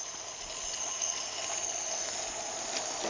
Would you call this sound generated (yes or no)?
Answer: no